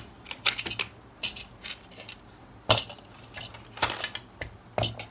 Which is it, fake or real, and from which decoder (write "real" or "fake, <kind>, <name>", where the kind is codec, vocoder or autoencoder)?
real